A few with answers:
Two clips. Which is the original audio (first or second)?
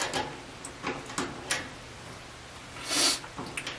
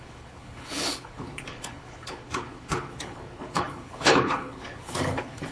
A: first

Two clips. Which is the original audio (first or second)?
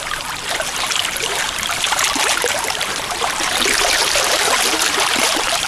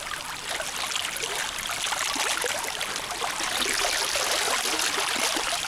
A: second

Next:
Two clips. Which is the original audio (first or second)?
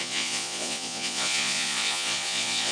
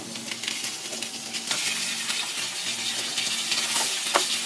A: second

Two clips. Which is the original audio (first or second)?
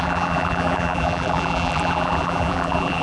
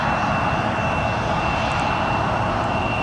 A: second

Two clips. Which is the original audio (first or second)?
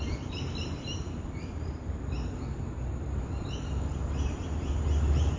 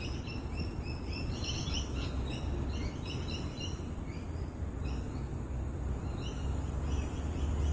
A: second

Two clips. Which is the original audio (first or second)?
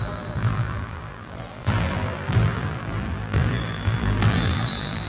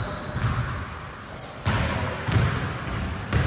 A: second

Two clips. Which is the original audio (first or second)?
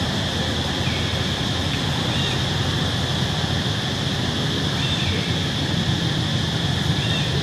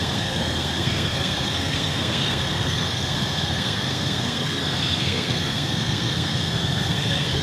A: first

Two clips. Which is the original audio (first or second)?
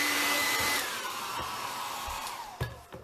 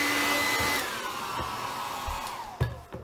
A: second